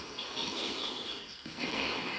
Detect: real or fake fake